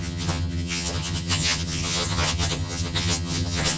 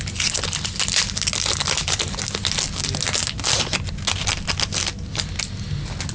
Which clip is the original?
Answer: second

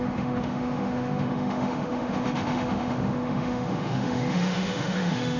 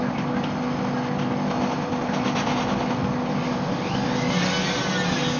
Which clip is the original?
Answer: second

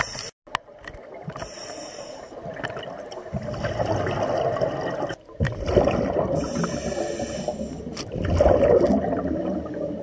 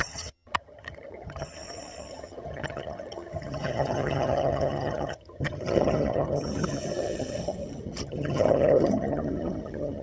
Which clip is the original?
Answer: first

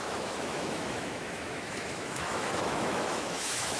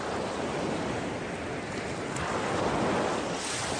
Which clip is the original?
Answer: second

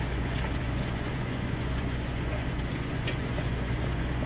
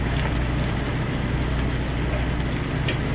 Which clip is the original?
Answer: second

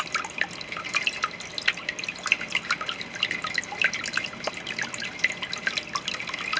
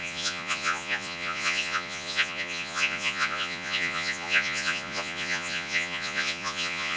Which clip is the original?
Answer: first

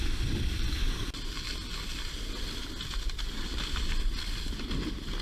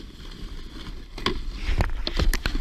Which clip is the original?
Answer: first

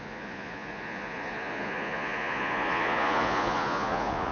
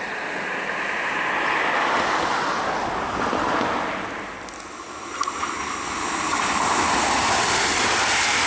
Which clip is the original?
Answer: second